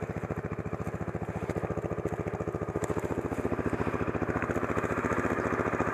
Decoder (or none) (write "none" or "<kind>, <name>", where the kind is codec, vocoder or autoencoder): none